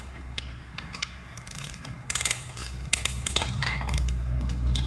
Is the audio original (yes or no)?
no